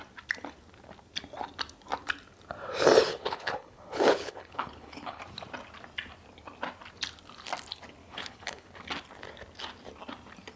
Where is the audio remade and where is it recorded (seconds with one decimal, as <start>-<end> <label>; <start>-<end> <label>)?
0.0-3.0 recorded; 3.0-5.2 remade; 5.2-8.0 recorded; 8.0-8.7 remade; 8.7-10.6 recorded